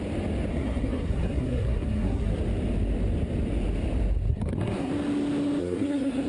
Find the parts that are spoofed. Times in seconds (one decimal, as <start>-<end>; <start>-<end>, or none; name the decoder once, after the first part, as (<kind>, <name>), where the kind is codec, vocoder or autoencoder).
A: 0.5-2.3 (codec, SNAC); 4.3-4.9; 5.6-6.3